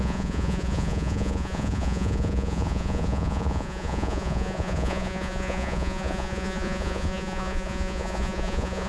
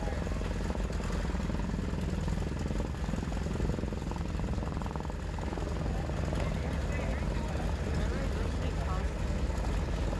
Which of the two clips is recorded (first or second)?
second